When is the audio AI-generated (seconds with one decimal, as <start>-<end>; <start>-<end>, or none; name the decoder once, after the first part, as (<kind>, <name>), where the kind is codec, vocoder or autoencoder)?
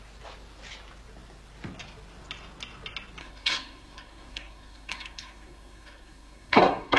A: 3.2-7.0 (codec, SNAC)